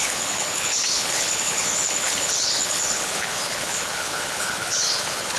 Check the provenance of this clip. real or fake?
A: fake